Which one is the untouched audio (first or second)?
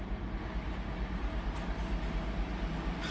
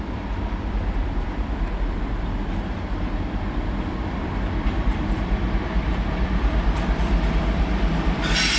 first